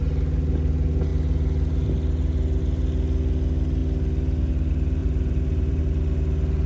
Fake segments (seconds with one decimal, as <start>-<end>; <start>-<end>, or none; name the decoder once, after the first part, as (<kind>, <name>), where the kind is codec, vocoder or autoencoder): 5.0-5.8 (vocoder, BigVGAN v2)